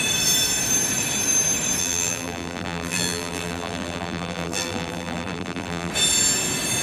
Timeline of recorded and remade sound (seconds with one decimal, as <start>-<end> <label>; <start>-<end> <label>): 0.0-1.8 recorded; 1.8-5.9 remade; 5.9-6.8 recorded